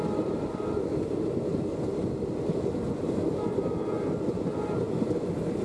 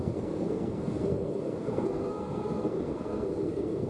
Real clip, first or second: first